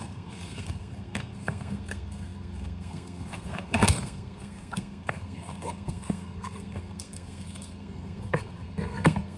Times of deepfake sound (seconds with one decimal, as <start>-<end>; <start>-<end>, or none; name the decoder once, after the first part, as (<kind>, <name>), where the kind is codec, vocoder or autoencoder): 0.0-9.4 (codec, SNAC)